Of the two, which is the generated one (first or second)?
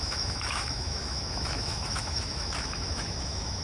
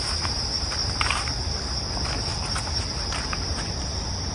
first